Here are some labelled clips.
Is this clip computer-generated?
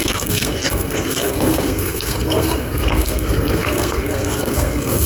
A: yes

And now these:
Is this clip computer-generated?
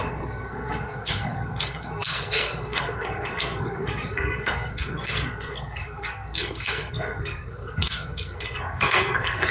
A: yes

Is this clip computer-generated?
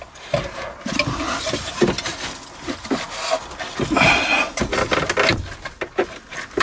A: no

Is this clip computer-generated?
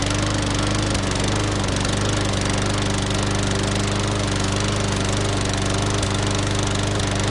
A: no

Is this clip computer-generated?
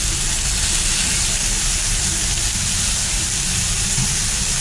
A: no